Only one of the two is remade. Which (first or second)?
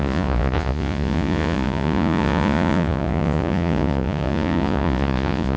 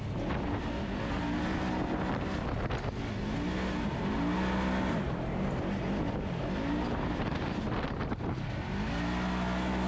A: first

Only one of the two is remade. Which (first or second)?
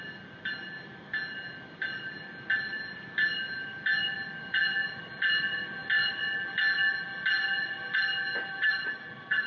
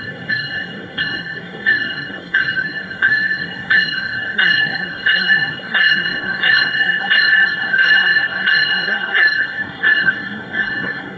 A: second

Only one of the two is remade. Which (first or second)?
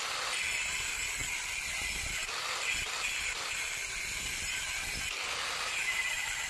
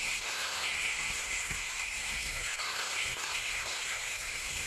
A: second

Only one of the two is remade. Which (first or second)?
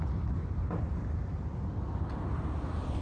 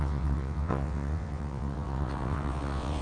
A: second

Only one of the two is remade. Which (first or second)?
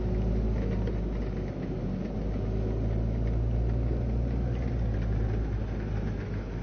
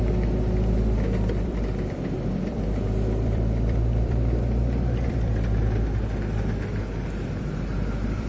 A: second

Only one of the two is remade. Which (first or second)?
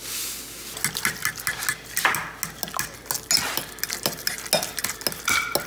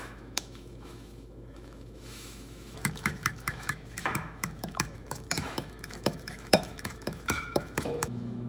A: second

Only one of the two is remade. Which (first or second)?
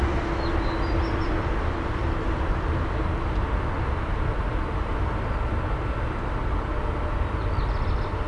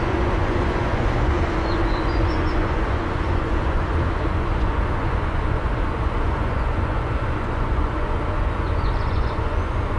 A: second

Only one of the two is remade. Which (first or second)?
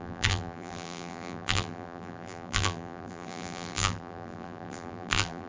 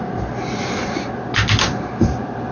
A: first